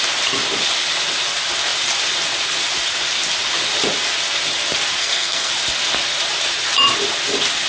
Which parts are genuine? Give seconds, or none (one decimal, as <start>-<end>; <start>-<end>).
0.0-5.0; 5.5-7.7